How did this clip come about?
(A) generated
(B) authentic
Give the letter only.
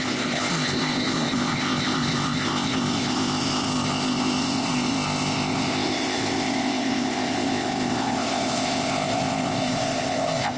A